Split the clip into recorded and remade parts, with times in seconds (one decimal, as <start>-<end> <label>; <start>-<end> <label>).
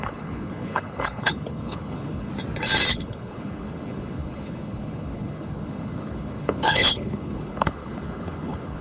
0.0-2.3 remade; 2.3-2.9 recorded; 2.9-8.8 remade